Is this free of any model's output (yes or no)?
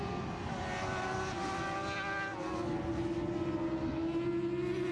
yes